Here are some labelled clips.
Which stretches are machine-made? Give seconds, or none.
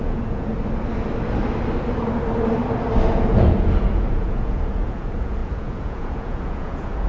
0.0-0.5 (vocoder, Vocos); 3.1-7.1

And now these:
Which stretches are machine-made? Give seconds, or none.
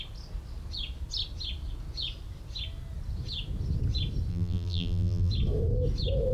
4.3-5.3 (vocoder, BigVGAN v2)